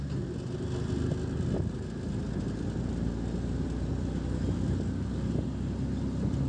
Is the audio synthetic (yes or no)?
no